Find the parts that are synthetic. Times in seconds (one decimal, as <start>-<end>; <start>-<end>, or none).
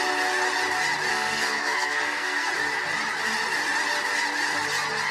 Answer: 1.1-2.5